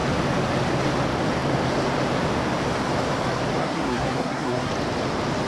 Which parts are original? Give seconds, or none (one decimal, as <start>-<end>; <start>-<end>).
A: 0.0-3.6; 4.7-5.5